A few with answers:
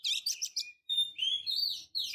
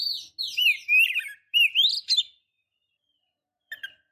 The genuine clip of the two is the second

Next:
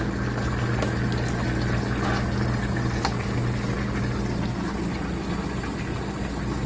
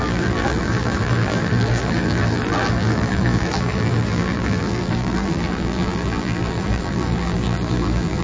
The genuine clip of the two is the first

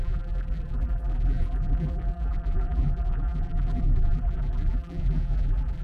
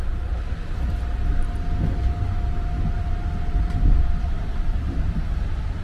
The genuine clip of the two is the second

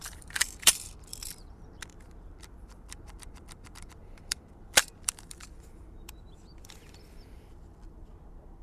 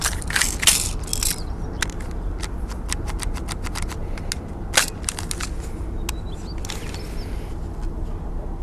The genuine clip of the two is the second